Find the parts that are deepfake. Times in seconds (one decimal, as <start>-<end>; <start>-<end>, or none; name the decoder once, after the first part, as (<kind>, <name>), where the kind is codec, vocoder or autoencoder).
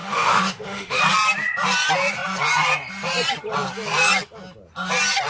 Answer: 0.0-1.0 (autoencoder, DAC-VAE)